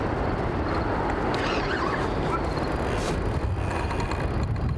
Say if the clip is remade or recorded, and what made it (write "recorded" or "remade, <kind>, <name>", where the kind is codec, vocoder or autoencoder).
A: recorded